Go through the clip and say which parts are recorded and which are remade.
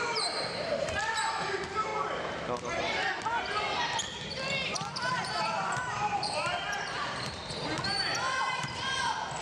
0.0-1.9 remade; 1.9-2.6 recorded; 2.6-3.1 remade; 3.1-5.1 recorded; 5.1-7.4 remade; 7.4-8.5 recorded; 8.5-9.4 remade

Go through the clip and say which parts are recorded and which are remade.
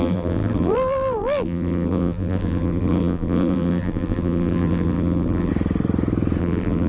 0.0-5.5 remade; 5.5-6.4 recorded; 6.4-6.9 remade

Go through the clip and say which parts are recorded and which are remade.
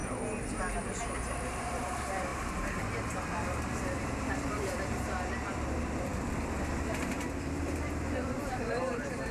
0.0-1.0 recorded; 1.0-6.1 remade; 6.1-7.4 recorded; 7.4-9.3 remade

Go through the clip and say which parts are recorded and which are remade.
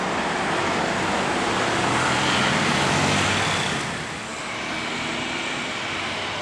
0.0-4.3 remade; 4.3-5.7 recorded; 5.7-6.4 remade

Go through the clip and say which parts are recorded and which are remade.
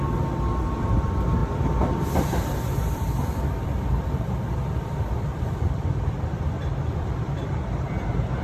0.0-8.4 remade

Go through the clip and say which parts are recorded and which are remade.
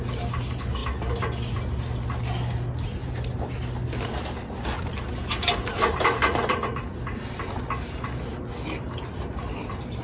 0.0-10.0 recorded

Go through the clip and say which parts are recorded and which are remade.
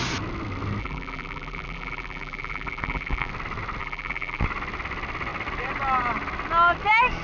0.0-0.8 recorded; 0.8-3.3 remade; 3.3-3.8 recorded; 3.8-4.4 remade; 4.4-7.2 recorded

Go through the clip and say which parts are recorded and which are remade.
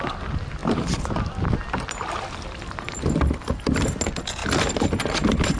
0.0-0.6 recorded; 0.6-1.1 remade; 1.1-4.4 recorded; 4.4-5.6 remade